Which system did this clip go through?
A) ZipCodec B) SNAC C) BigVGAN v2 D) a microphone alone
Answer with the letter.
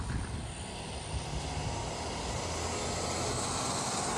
D